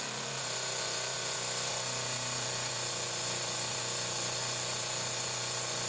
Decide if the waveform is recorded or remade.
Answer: remade